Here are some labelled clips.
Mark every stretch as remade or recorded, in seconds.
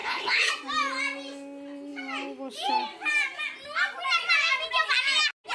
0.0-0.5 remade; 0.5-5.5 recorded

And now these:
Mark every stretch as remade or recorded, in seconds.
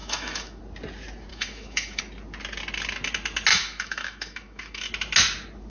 0.0-0.6 remade; 0.6-1.3 recorded; 1.3-2.0 remade; 2.0-3.5 recorded; 3.5-4.9 remade; 4.9-5.7 recorded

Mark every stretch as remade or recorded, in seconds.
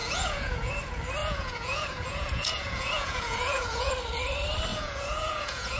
0.0-0.7 remade; 0.7-1.2 recorded; 1.2-3.9 remade; 3.9-4.7 recorded; 4.7-5.8 remade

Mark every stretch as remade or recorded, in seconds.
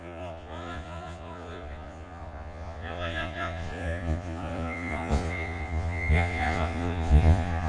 0.0-7.7 remade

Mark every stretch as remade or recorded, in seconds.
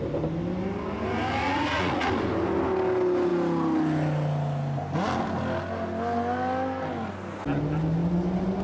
0.0-1.4 recorded; 1.4-2.1 remade; 2.1-8.6 recorded